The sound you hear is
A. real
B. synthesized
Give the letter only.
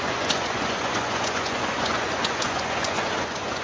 B